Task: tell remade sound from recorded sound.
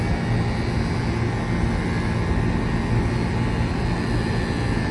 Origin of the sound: recorded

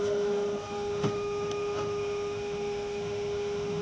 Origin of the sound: remade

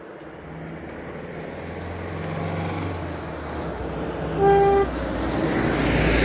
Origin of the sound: recorded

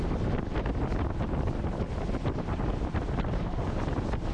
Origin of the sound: recorded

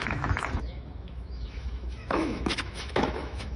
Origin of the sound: remade